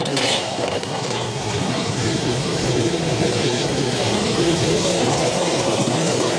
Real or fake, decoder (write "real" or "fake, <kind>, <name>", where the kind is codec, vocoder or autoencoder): fake, codec, SNAC